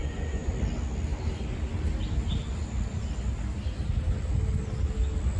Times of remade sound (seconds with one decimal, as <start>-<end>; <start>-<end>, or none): 0.0-0.5